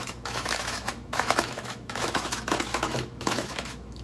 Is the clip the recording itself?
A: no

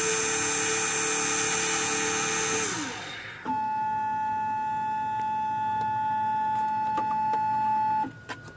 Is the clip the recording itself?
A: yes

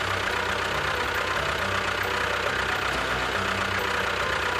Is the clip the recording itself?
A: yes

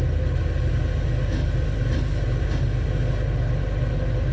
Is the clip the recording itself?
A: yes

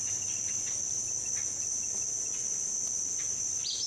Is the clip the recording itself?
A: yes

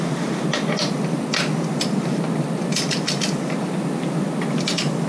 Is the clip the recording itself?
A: yes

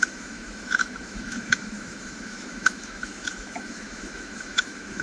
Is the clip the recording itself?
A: no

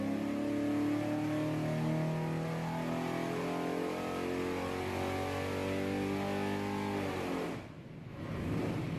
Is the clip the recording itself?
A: yes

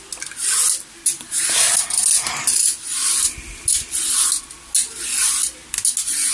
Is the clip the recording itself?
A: yes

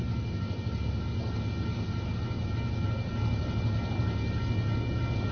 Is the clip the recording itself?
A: yes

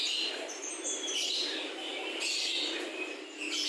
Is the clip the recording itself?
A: yes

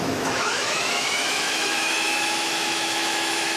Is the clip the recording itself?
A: no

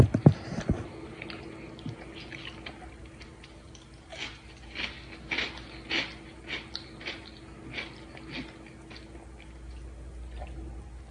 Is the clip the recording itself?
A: yes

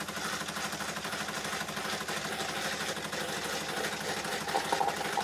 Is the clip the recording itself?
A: yes